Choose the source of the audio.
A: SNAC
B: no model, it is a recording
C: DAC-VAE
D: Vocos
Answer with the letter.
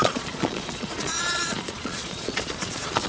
D